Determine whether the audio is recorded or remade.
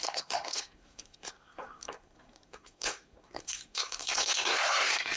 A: remade